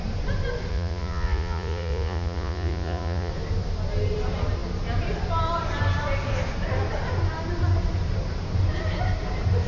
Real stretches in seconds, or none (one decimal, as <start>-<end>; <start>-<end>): 0.0-0.7; 3.3-9.7